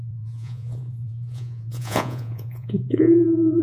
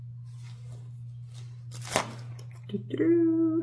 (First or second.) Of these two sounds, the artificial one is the first